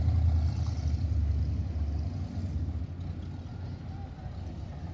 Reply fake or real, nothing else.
real